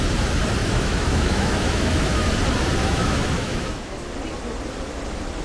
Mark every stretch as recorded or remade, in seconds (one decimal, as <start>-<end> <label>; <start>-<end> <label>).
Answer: 0.0-0.6 recorded; 0.6-2.3 remade; 2.3-2.8 recorded; 2.8-3.9 remade; 3.9-5.4 recorded